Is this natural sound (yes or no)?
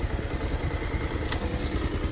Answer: yes